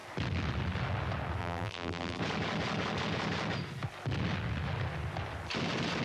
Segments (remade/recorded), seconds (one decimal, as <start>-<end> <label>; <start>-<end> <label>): 0.0-1.4 recorded; 1.4-2.2 remade; 2.2-6.0 recorded